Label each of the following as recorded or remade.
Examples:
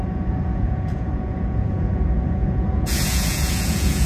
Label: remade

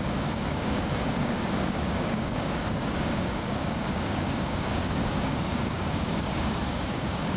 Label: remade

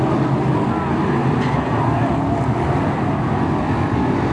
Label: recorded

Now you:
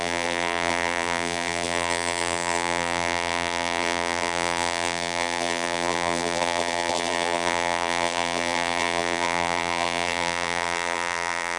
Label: remade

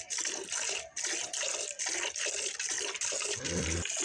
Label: recorded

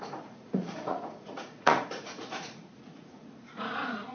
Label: remade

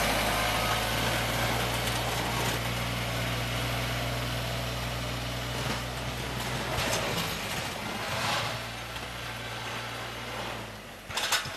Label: recorded